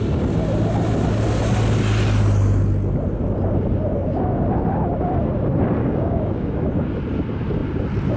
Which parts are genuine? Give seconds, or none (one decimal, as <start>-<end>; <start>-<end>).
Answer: 0.0-5.8; 6.5-8.2

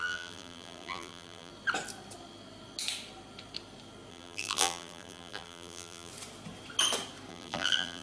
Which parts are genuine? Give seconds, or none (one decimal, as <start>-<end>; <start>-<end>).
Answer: 1.5-4.1; 6.1-7.3

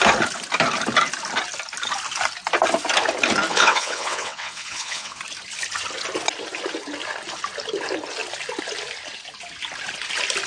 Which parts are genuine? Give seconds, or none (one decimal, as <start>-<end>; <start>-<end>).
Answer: 0.0-3.5; 5.2-10.5

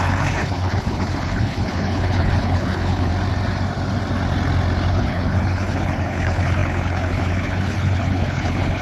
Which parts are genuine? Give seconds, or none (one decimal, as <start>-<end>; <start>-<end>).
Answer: 3.1-4.9

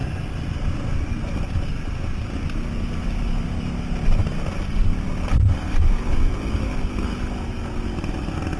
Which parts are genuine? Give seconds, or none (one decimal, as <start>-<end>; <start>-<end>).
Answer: 0.0-8.6

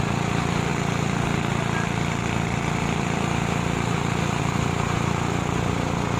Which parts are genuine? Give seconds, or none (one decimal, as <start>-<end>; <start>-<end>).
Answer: 0.0-6.2